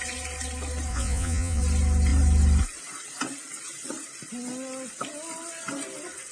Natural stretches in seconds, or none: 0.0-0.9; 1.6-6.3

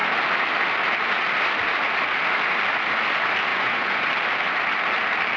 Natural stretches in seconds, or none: 0.0-3.5; 4.1-5.4

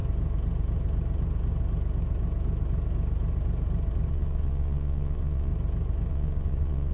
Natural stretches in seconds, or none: 0.0-4.1; 5.5-6.1

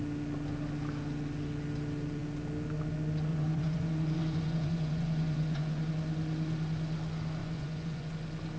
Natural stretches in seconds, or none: 0.0-3.3; 5.9-7.4; 8.1-8.6

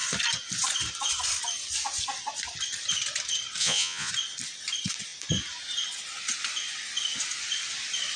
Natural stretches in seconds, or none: 0.0-3.6; 4.1-8.2

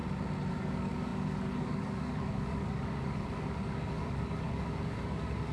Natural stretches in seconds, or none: 0.0-0.5

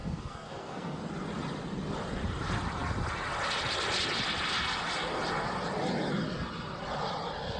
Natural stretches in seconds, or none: 1.0-7.6